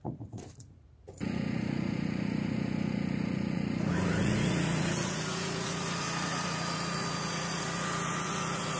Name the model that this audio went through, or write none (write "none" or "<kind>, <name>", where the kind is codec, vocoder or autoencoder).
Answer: vocoder, Vocos